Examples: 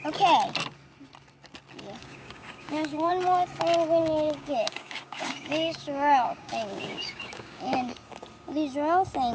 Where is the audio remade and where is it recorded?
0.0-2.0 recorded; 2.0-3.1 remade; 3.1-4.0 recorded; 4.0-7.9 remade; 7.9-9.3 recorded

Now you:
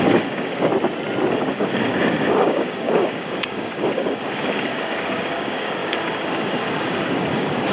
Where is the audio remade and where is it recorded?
0.0-0.7 remade; 0.7-1.3 recorded; 1.3-7.7 remade